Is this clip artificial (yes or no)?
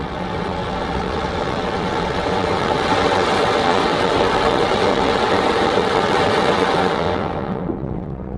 yes